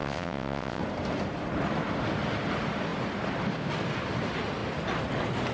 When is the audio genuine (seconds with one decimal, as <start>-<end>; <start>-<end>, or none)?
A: 0.8-5.5